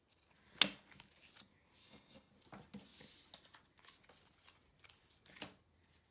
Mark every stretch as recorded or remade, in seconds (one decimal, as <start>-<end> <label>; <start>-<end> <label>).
0.0-1.8 recorded; 1.8-2.3 remade; 2.3-6.1 recorded